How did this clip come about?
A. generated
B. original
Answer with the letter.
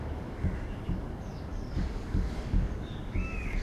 A